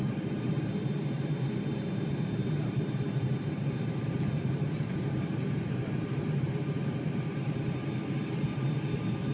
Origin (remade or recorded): remade